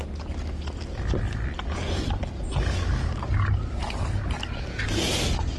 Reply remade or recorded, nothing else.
recorded